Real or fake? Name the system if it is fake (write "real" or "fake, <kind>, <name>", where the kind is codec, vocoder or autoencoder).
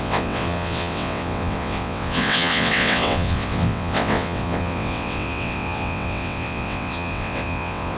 fake, vocoder, WaveNeXt